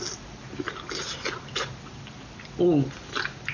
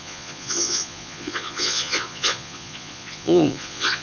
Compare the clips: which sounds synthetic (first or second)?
second